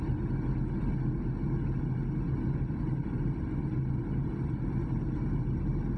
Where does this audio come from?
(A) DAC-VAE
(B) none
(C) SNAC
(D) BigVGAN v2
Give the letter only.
B